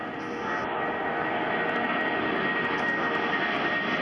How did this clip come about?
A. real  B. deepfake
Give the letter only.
A